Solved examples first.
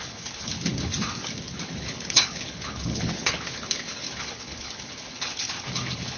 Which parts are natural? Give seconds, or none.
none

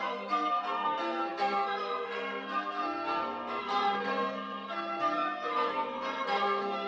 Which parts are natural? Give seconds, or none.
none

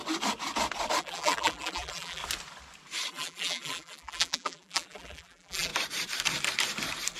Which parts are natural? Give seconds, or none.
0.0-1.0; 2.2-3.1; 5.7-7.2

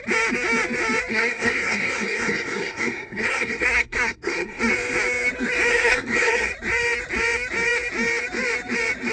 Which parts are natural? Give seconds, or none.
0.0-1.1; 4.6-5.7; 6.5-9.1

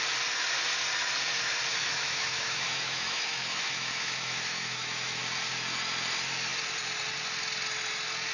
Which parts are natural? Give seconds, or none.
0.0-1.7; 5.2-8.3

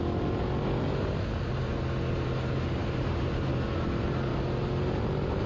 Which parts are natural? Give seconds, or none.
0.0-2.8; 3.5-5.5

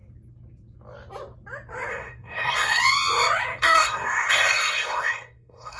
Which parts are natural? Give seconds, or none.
0.0-1.9; 2.8-3.6